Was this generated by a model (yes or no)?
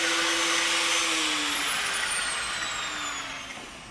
no